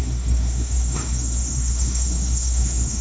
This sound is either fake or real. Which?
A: fake